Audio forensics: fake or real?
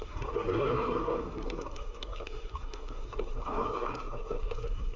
fake